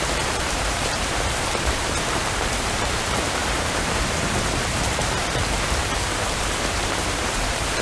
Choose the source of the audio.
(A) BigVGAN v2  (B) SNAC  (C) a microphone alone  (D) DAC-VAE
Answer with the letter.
A